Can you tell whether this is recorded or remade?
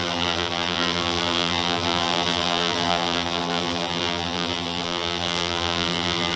remade